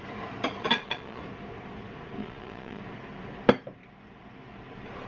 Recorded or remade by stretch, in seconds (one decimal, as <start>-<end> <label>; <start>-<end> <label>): 0.0-0.6 recorded; 0.6-1.2 remade; 1.2-2.2 recorded; 2.2-2.8 remade; 2.8-5.1 recorded